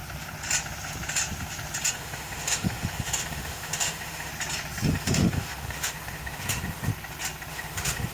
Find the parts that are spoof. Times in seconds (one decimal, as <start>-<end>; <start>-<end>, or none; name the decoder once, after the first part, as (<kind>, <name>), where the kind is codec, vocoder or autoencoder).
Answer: 1.9-4.3 (autoencoder, DAC-VAE); 4.9-6.9; 7.5-8.1

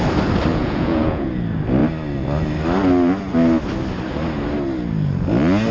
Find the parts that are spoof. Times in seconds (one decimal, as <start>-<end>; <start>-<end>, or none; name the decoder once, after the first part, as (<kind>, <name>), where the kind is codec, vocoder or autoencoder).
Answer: 0.5-1.3 (vocoder, Vocos)

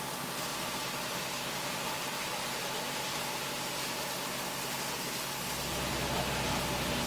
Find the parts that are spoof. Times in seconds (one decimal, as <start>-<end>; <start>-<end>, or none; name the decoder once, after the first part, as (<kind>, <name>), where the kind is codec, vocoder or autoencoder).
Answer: 0.5-2.3 (vocoder, BigVGAN v2)

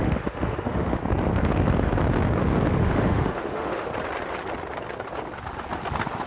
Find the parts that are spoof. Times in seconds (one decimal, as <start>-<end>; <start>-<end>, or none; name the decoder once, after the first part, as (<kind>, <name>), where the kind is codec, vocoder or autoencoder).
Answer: 0.0-1.0 (autoencoder, DAC-VAE); 2.7-3.9

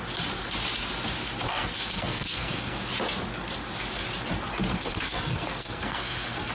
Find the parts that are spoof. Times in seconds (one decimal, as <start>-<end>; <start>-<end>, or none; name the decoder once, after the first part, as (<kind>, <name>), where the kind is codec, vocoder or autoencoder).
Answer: 1.5-2.8 (codec, SNAC); 4.7-6.5

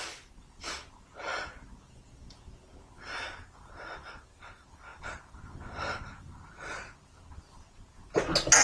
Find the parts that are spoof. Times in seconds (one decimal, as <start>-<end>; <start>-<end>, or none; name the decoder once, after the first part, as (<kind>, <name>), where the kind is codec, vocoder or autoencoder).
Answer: 1.3-2.3 (vocoder, BigVGAN v2); 4.9-7.7

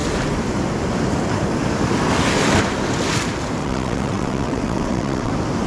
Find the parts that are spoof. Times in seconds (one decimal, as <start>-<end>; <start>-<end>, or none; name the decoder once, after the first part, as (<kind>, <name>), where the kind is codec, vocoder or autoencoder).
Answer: 3.6-5.3 (vocoder, WaveNeXt)